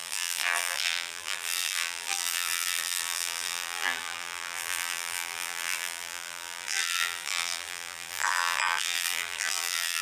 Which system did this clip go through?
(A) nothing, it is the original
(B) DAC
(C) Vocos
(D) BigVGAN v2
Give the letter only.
D